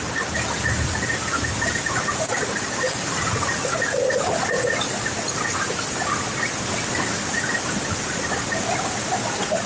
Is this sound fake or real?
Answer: real